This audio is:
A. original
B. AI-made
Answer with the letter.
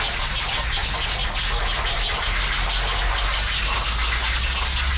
A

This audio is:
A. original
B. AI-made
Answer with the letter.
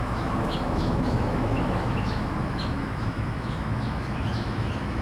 B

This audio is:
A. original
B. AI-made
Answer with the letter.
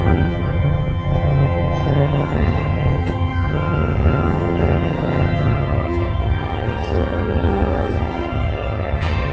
B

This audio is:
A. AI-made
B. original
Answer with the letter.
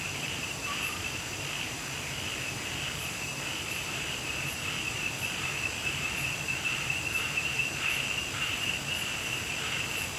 A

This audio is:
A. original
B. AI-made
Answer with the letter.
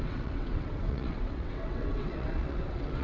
B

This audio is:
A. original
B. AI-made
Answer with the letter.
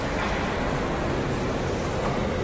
A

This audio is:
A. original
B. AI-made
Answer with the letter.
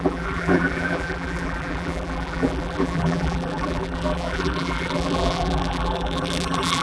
B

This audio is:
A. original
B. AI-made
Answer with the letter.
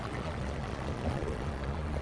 B